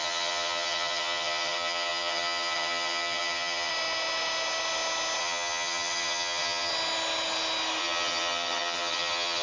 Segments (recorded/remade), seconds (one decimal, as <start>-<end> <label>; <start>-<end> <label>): 0.0-3.7 remade; 3.7-5.2 recorded; 5.2-6.7 remade; 6.7-7.8 recorded; 7.8-9.4 remade